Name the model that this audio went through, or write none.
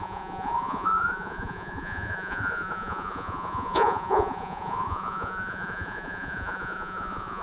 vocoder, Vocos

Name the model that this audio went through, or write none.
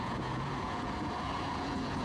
vocoder, Vocos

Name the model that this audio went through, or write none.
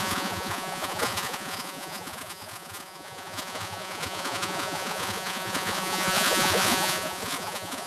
vocoder, Vocos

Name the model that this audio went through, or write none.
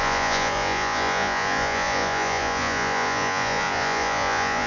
vocoder, Vocos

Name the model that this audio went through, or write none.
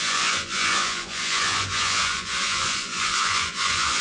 vocoder, Vocos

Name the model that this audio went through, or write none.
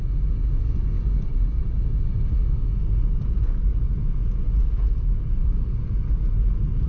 vocoder, Vocos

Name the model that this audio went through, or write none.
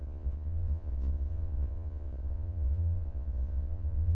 vocoder, Vocos